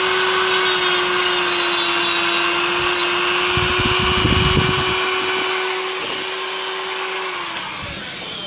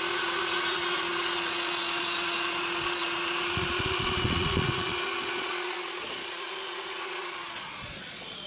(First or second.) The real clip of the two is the first